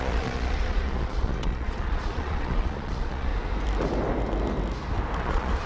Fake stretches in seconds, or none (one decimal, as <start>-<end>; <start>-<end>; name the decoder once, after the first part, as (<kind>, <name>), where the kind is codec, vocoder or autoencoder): 0.0-3.3 (vocoder, Vocos); 5.2-5.7